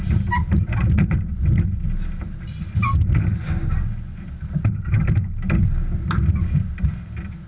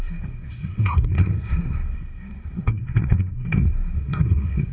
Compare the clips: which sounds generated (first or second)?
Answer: second